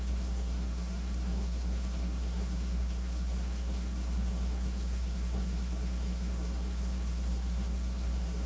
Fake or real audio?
fake